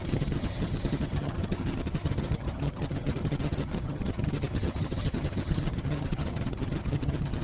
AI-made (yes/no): yes